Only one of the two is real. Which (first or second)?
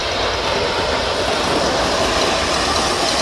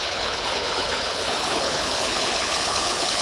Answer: first